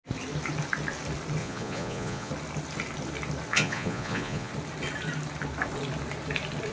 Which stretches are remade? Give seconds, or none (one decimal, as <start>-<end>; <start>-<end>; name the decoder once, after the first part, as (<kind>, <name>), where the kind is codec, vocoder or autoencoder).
1.4-2.3 (vocoder, Vocos); 3.5-4.5